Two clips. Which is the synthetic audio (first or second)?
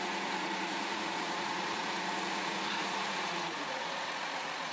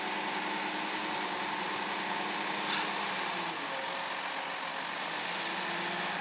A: first